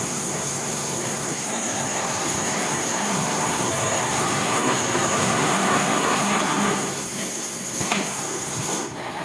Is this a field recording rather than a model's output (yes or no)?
no